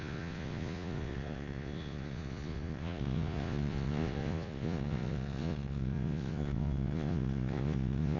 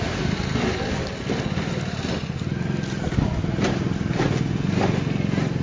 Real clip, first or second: second